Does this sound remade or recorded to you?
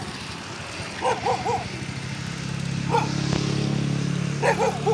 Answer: recorded